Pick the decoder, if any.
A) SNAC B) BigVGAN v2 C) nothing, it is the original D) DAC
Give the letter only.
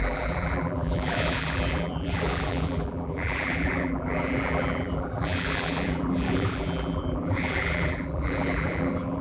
B